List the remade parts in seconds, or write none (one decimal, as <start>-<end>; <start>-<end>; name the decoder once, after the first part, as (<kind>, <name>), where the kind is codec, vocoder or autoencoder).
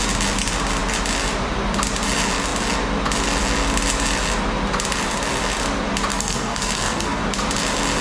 6.1-7.2 (codec, SNAC)